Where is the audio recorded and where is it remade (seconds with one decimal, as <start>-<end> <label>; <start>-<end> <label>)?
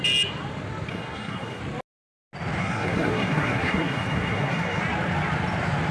0.0-0.9 recorded; 0.9-1.6 remade; 1.6-2.6 recorded; 2.6-4.8 remade; 4.8-5.9 recorded